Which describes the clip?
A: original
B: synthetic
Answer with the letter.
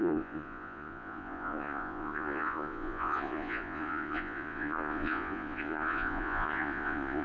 B